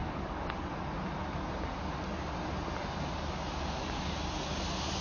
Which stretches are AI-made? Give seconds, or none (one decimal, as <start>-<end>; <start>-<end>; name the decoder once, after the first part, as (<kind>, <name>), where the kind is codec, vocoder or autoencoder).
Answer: 0.0-0.7 (codec, DAC)